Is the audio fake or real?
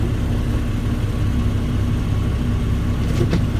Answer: real